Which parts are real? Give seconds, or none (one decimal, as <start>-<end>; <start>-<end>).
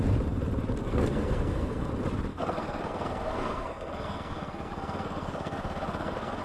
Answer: 0.0-0.8; 1.9-2.3